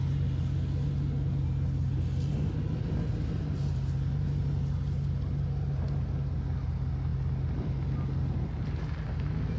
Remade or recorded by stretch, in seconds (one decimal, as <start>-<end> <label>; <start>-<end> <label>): 0.0-9.6 recorded